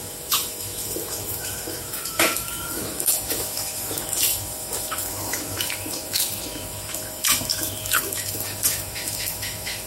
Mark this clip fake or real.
fake